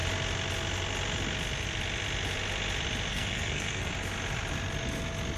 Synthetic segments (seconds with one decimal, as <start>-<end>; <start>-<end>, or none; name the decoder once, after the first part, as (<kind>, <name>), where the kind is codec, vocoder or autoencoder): 3.1-3.9 (codec, SNAC)